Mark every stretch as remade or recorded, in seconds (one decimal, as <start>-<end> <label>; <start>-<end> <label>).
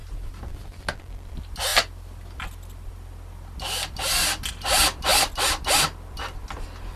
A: 0.0-7.0 recorded